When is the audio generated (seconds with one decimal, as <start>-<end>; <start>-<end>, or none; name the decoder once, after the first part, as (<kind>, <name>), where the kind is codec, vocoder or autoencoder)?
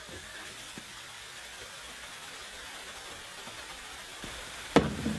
none